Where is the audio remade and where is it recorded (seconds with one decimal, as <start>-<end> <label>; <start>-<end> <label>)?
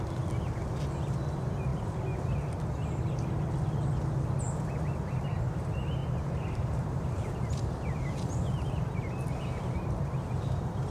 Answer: 0.0-6.0 recorded; 6.0-7.7 remade; 7.7-10.9 recorded